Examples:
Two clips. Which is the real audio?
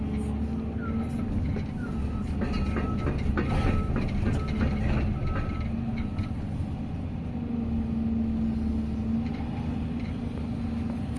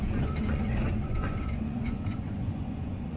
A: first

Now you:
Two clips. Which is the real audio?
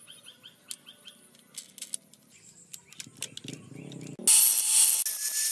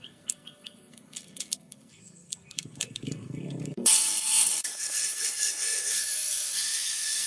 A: first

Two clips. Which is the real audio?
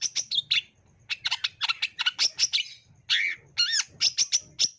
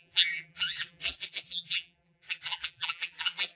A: first